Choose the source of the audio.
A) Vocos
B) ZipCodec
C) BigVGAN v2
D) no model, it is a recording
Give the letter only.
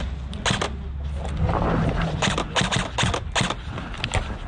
D